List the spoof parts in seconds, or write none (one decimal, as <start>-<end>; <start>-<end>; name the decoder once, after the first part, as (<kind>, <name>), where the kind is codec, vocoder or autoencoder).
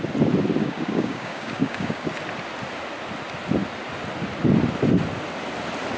0.6-2.1 (codec, DAC)